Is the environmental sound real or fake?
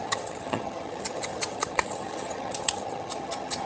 fake